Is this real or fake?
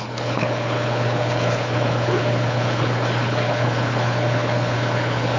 fake